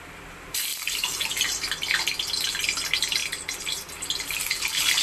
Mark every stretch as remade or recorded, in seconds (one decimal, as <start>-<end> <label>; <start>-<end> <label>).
0.0-0.7 recorded; 0.7-1.3 remade; 1.3-5.0 recorded